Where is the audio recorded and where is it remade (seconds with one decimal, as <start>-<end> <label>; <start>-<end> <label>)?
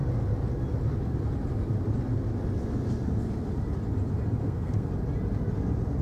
0.0-4.4 recorded; 4.4-4.9 remade; 4.9-6.0 recorded